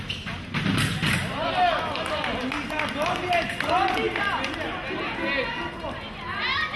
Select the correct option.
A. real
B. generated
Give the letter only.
A